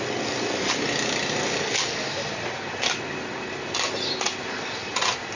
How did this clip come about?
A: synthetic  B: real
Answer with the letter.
B